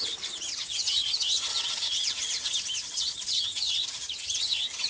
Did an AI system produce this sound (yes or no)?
yes